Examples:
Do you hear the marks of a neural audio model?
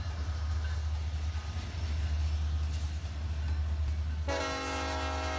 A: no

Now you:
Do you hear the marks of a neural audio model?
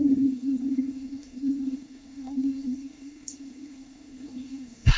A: yes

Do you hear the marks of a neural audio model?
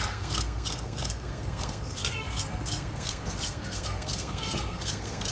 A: yes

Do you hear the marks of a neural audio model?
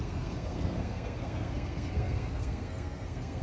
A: yes